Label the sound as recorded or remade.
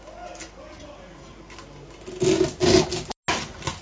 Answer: recorded